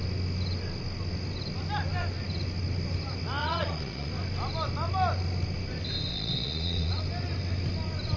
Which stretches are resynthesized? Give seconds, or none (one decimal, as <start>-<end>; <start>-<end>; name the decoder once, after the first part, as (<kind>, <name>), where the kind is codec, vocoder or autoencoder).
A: 3.4-4.1 (vocoder, Vocos); 6.1-7.0